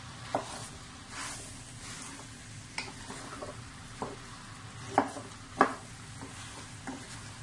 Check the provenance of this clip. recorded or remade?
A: recorded